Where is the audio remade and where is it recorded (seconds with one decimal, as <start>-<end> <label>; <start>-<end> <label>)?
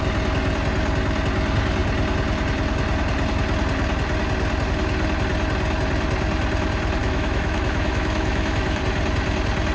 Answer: 0.0-7.0 recorded; 7.0-8.8 remade; 8.8-9.7 recorded